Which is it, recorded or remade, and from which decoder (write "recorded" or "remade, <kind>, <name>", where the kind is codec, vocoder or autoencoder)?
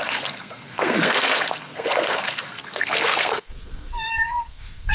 remade, codec, SNAC